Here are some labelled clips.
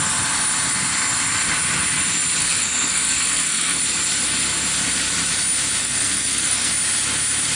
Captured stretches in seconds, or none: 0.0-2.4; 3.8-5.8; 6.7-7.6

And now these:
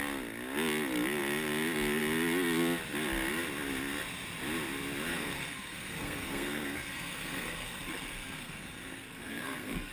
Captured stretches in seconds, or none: 0.0-5.1

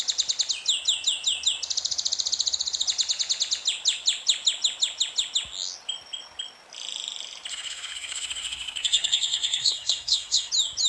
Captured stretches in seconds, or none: 0.0-7.5; 10.5-10.9

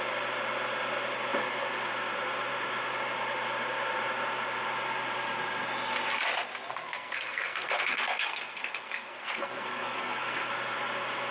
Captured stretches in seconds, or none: 0.0-6.7; 10.5-11.3

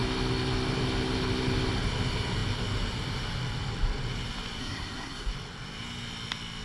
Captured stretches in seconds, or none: 0.0-4.6; 5.3-6.6

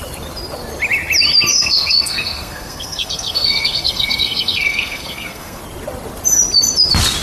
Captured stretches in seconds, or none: 0.0-1.5; 5.6-7.2

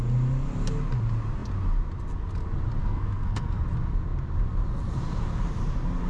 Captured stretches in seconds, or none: 0.0-2.8; 3.6-6.1